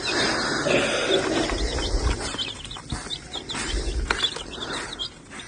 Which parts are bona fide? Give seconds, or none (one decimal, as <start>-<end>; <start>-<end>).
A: 0.0-5.5